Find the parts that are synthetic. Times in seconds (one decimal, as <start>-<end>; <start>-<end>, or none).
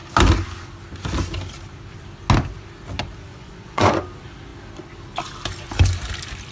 3.3-4.0